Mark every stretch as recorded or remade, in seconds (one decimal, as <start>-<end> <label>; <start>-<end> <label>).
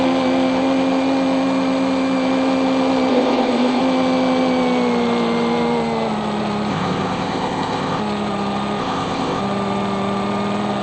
0.0-3.1 recorded; 3.1-3.8 remade; 3.8-6.7 recorded; 6.7-8.0 remade; 8.0-8.8 recorded; 8.8-9.4 remade; 9.4-10.8 recorded